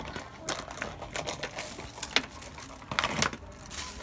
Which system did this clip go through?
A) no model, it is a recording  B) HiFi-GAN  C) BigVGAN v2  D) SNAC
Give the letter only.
A